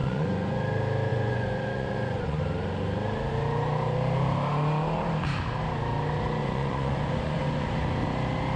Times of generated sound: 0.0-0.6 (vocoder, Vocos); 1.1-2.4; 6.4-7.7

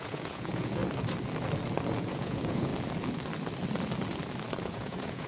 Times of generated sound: 0.0-0.8 (vocoder, Vocos); 2.0-2.7; 4.6-5.3

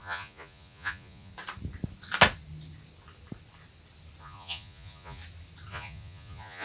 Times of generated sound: 0.0-1.3 (vocoder, Vocos); 4.2-5.2; 5.7-6.6